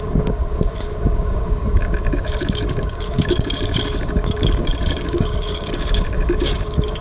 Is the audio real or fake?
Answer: fake